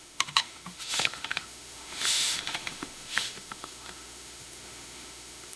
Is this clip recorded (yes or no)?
no